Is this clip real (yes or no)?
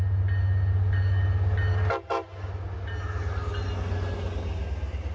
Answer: yes